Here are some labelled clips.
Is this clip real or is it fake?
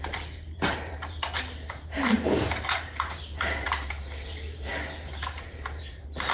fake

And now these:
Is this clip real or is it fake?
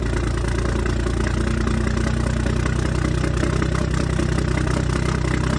real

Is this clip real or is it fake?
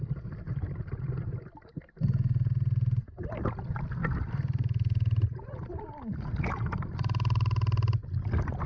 real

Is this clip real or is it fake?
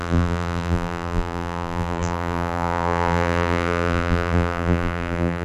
fake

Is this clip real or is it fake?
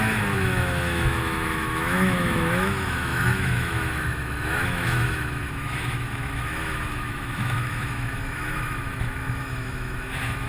fake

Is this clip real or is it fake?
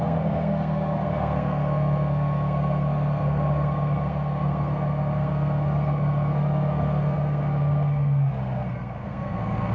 fake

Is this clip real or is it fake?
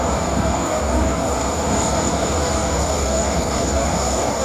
fake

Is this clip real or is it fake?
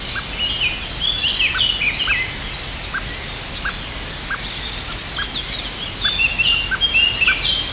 real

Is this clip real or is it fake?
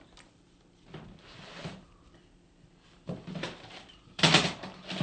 fake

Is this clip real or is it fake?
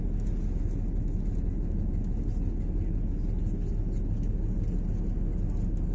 real